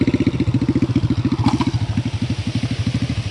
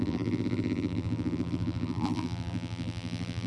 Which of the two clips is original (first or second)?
first